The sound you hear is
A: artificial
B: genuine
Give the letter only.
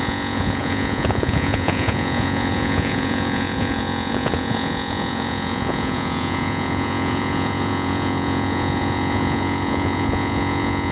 A